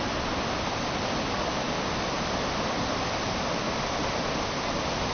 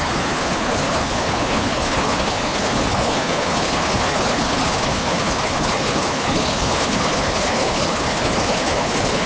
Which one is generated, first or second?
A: second